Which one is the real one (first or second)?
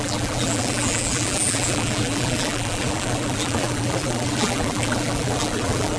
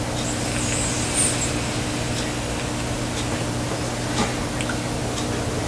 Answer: second